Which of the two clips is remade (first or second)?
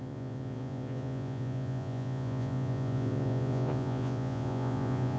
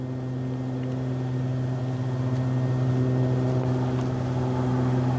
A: first